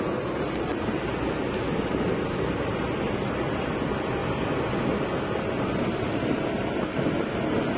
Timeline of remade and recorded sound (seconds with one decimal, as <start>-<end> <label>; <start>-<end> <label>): 0.0-7.8 recorded